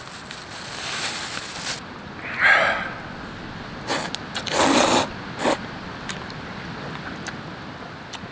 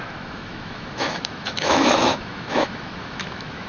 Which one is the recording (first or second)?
first